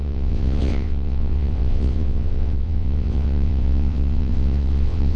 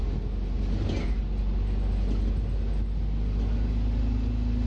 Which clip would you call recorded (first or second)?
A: second